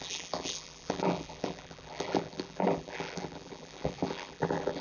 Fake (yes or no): yes